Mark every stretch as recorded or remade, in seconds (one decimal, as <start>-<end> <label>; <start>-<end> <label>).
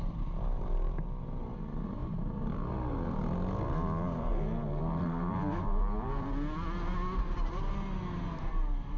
0.0-9.0 recorded